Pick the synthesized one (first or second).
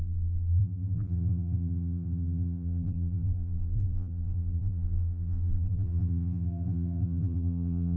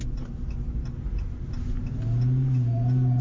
first